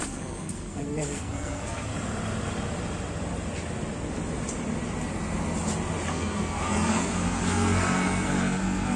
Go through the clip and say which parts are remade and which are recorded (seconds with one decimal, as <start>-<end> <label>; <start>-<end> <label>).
0.0-1.9 remade; 1.9-6.1 recorded; 6.1-9.0 remade